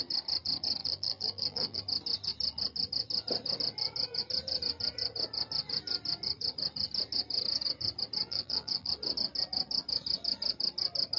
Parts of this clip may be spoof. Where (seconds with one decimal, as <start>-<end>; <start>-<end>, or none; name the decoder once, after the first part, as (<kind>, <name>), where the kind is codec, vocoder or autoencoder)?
0.8-1.8 (vocoder, BigVGAN v2); 8.2-8.9